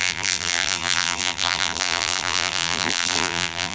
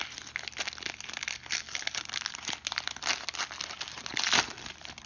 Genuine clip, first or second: second